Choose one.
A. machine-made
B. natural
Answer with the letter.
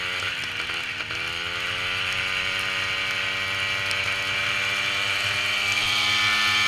B